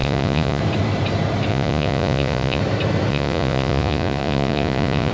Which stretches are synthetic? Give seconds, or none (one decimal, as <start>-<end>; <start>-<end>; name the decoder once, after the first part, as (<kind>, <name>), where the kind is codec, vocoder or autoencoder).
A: 0.0-0.6 (vocoder, Vocos); 1.5-2.6; 3.1-5.1